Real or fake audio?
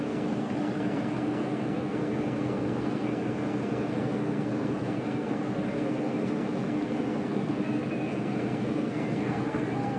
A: fake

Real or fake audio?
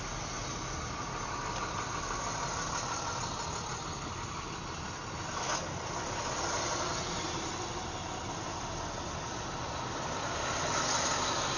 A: real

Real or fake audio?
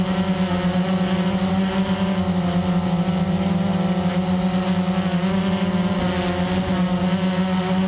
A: real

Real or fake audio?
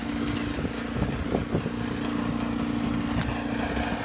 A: real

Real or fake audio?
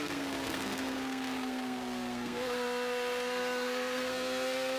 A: fake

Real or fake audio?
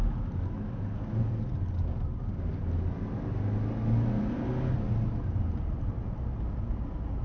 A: real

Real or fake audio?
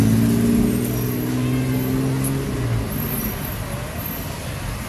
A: real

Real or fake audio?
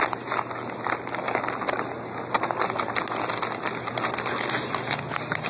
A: real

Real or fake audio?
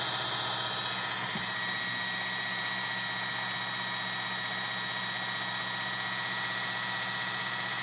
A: real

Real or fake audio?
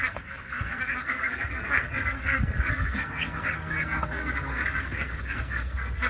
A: fake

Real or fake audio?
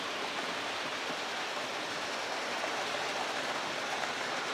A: real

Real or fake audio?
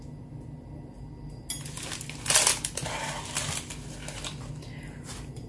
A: real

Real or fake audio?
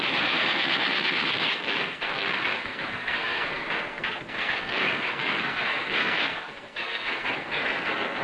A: fake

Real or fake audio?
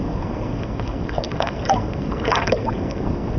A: fake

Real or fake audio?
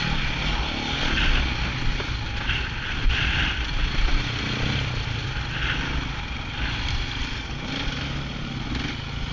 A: real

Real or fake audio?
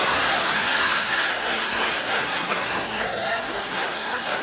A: fake